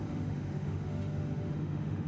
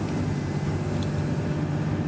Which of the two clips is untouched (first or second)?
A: second